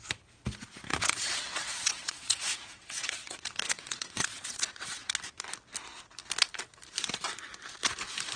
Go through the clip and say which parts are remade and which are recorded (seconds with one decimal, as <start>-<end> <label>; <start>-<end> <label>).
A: 0.0-0.9 recorded; 0.9-5.1 remade; 5.1-8.4 recorded